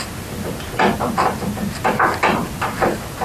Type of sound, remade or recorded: recorded